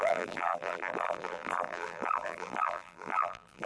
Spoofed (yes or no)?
yes